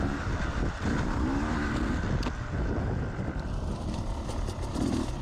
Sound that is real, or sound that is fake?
real